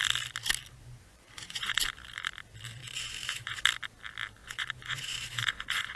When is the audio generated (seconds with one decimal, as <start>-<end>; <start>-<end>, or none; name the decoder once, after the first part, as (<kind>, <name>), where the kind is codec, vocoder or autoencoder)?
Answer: 0.8-1.8 (vocoder, Vocos); 2.8-3.6; 4.4-6.0